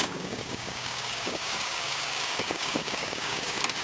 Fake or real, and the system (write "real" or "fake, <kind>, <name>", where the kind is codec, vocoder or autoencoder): fake, codec, DAC